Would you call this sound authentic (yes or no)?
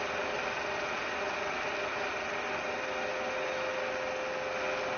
yes